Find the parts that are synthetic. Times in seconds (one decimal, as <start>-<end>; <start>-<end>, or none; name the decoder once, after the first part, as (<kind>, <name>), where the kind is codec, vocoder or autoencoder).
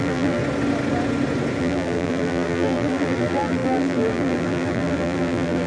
0.0-0.4 (vocoder, BigVGAN v2); 1.6-5.7